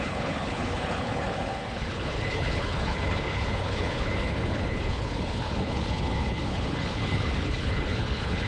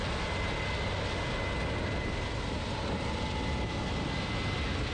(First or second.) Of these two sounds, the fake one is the first